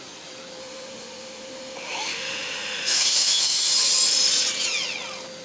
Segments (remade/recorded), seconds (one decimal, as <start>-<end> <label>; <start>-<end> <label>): 0.0-0.6 recorded; 0.6-3.7 remade; 3.7-5.4 recorded